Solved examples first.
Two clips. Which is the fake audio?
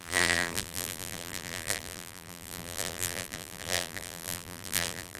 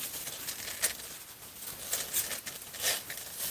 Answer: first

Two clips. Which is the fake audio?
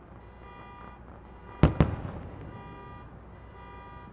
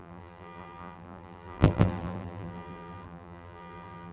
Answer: second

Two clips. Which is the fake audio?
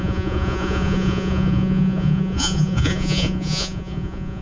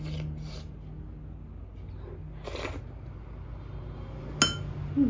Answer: first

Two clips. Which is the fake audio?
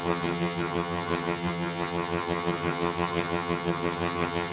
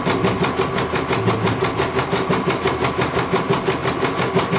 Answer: first